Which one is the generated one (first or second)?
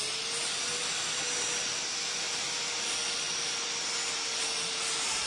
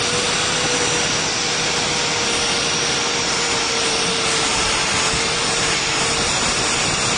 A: second